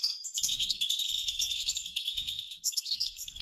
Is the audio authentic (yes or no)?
no